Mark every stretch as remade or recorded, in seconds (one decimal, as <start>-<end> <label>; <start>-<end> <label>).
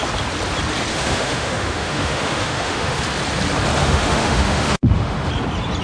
0.0-0.9 recorded; 0.9-3.0 remade; 3.0-3.8 recorded; 3.8-5.3 remade; 5.3-5.8 recorded